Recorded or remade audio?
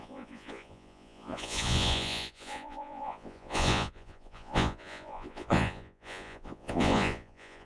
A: remade